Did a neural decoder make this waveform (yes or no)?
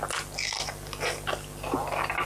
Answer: no